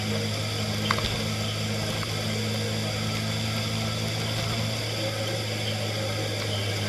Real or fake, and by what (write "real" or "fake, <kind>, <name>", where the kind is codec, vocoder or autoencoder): real